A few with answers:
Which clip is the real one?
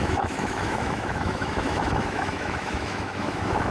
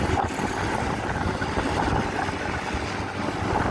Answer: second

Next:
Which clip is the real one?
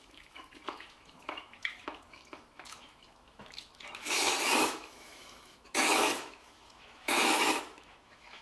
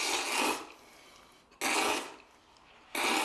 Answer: second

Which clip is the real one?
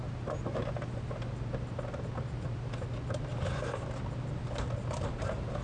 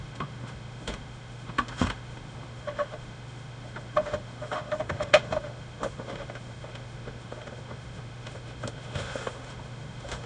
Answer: first